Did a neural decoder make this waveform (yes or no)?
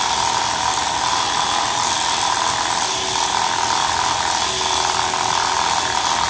no